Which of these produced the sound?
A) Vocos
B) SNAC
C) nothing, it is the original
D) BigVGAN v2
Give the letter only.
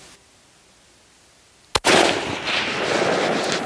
C